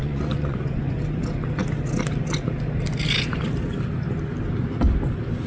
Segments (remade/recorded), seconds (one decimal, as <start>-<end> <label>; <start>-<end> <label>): 0.0-1.0 remade; 1.0-5.5 recorded